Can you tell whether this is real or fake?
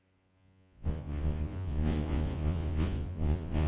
fake